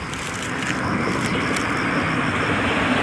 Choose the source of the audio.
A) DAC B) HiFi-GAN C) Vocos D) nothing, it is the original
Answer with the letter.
D